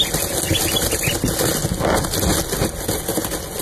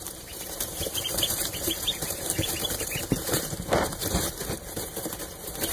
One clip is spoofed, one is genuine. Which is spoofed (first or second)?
second